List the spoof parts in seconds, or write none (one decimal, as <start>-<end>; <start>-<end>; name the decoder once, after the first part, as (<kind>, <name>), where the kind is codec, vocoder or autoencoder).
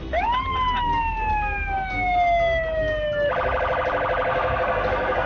4.3-5.3 (codec, SNAC)